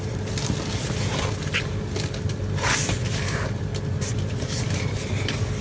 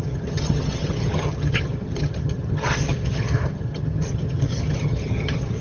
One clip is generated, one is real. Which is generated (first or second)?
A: second